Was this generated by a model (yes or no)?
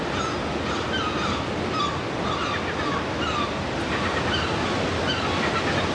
no